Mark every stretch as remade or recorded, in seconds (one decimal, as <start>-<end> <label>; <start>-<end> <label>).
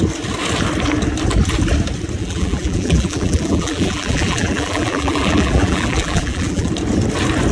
0.0-2.2 recorded; 2.2-6.7 remade; 6.7-7.5 recorded